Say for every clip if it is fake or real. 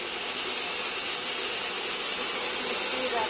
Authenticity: real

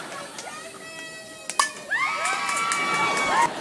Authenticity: real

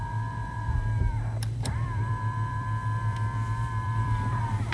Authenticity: fake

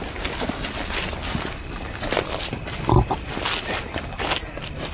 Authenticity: real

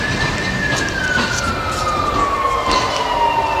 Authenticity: real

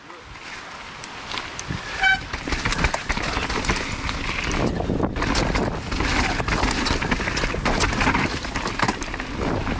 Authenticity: real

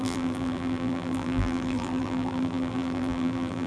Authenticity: fake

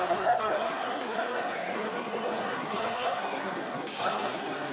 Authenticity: fake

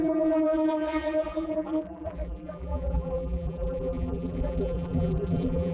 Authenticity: fake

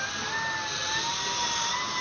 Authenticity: real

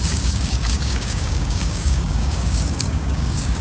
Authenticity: fake